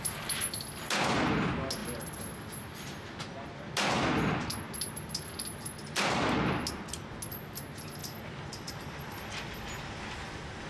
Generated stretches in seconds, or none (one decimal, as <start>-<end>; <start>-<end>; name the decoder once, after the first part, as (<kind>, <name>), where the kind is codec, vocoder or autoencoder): none